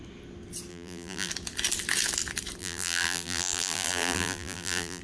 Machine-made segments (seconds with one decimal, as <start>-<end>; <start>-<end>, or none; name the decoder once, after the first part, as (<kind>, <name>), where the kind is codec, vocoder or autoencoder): 0.7-1.3 (vocoder, BigVGAN v2); 2.6-5.0